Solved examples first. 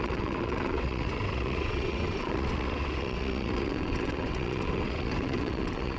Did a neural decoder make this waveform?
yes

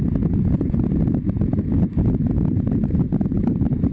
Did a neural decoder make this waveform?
no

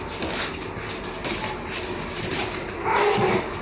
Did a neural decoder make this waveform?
no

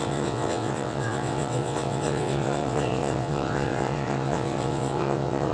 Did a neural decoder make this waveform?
yes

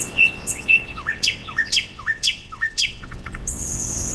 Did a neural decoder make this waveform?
yes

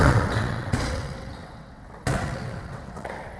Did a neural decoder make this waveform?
yes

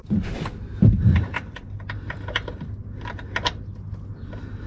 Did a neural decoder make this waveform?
no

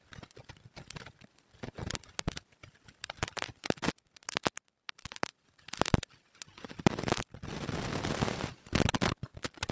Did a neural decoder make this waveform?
no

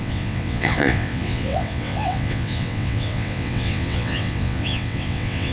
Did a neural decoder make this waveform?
yes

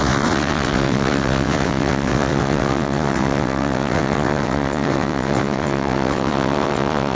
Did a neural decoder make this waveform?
yes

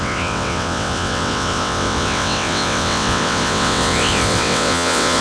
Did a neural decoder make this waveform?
yes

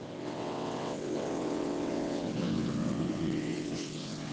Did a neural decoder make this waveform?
yes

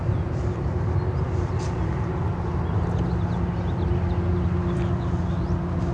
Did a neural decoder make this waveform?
no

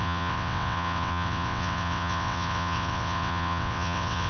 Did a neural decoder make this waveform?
yes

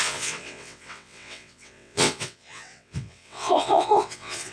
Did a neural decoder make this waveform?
yes